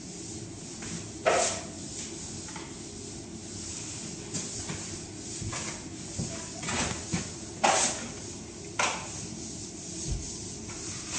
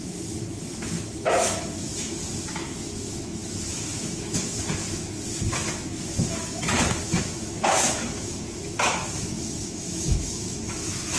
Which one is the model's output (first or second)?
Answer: second